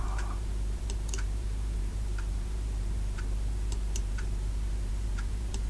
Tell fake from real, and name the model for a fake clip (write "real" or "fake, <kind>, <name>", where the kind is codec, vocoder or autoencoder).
fake, vocoder, BigVGAN v2